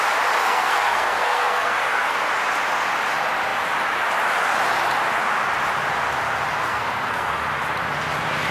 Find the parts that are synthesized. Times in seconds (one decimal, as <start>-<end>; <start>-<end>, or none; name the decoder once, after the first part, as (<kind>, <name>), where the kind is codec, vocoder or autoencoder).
0.4-2.3 (codec, SNAC); 6.7-7.4